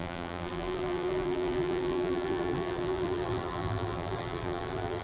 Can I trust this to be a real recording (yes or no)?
no